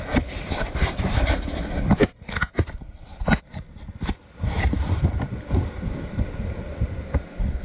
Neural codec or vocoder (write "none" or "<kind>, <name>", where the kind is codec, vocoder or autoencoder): none